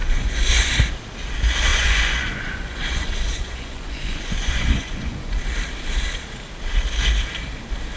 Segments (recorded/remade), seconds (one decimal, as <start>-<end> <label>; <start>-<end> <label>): 0.0-0.7 remade; 0.7-1.7 recorded; 1.7-5.3 remade; 5.3-8.0 recorded